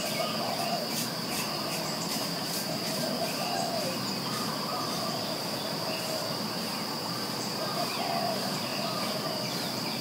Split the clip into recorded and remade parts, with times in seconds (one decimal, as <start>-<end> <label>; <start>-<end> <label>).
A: 0.0-10.0 recorded